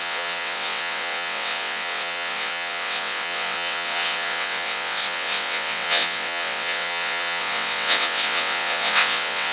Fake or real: fake